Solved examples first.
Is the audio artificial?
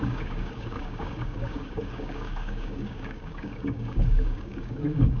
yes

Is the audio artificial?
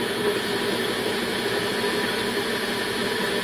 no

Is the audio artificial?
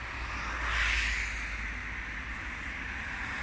no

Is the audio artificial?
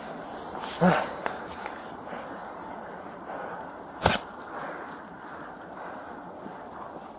no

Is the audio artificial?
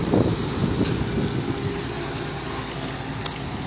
no